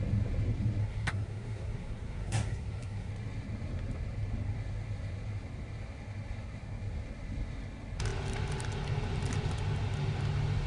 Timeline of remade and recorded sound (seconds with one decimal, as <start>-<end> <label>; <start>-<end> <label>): 0.0-0.8 recorded; 0.8-3.1 remade; 3.1-10.7 recorded

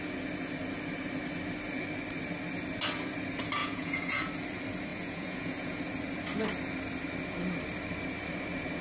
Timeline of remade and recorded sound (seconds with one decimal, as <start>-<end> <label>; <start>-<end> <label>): 0.0-3.6 recorded; 3.6-4.3 remade; 4.3-4.9 recorded; 4.9-5.8 remade; 5.8-8.8 recorded

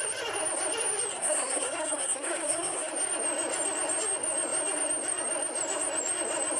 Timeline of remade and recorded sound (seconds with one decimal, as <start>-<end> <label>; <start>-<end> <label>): 0.0-1.1 recorded; 1.1-2.9 remade; 2.9-6.6 recorded

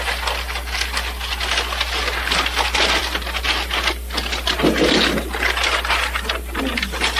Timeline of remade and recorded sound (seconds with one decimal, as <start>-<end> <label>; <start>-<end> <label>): 0.0-7.2 recorded

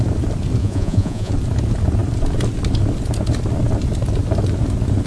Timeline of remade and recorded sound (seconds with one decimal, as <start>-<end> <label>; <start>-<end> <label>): 0.0-0.6 recorded; 0.6-1.3 remade; 1.3-5.1 recorded

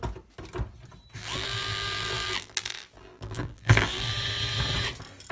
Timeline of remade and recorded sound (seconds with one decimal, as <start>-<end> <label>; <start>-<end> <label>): 0.0-1.2 recorded; 1.2-4.1 remade; 4.1-5.3 recorded